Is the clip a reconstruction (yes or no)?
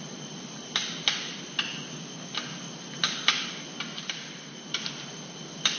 no